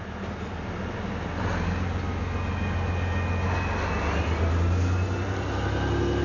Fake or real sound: real